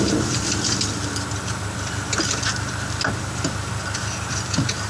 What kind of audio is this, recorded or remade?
recorded